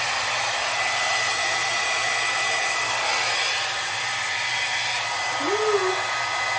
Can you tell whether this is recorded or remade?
recorded